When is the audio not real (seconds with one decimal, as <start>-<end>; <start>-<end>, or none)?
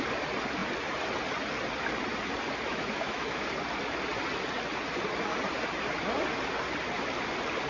2.7-3.5